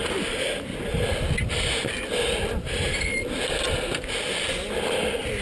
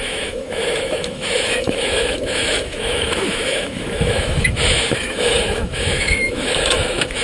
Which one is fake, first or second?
second